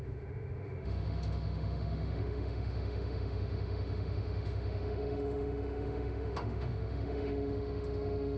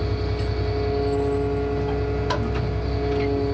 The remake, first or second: first